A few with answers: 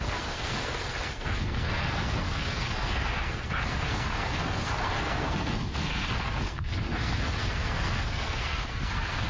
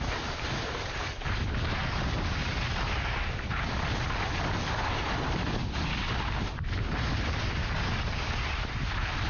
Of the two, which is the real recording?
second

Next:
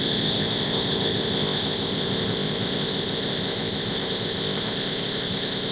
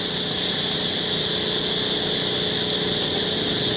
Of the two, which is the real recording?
second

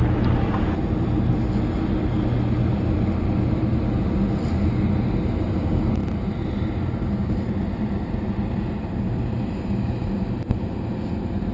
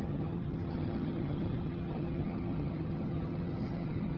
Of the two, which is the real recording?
first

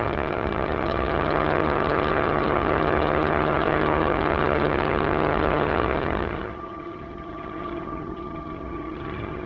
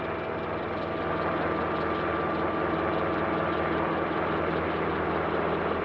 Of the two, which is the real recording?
second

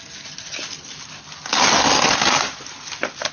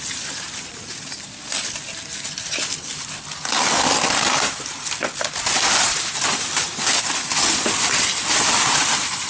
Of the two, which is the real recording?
first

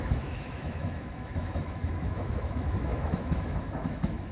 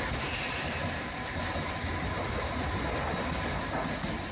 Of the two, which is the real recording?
second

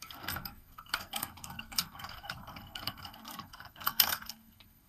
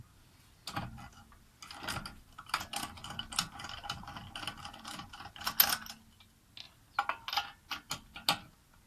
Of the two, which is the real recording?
second